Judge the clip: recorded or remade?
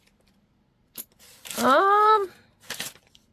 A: remade